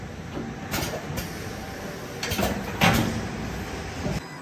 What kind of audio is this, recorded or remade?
recorded